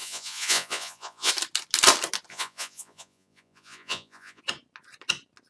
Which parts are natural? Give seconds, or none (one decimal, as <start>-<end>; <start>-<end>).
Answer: 1.3-2.3; 4.4-5.5